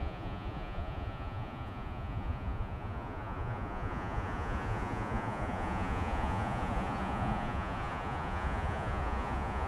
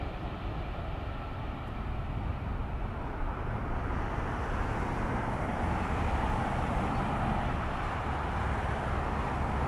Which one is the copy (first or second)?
first